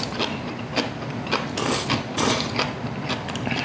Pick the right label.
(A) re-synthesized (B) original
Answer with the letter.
B